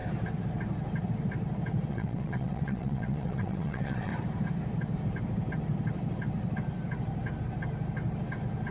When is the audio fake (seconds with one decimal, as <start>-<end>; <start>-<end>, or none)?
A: 1.9-4.1